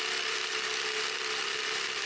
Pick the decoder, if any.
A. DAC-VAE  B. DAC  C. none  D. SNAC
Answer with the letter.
C